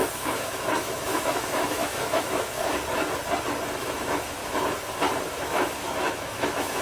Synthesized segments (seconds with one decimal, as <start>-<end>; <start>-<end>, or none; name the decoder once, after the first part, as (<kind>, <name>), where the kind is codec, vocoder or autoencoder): 0.0-2.6 (autoencoder, DAC-VAE); 3.8-4.4; 5.3-6.8